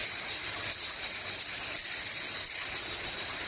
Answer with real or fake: real